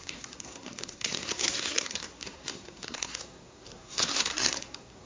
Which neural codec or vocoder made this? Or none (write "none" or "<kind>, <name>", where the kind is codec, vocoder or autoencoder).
codec, SNAC